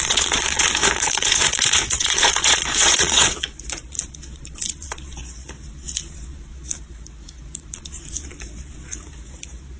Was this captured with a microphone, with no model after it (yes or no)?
no